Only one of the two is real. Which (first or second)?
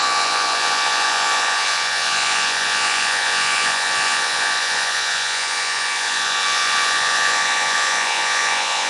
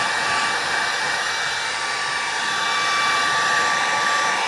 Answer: second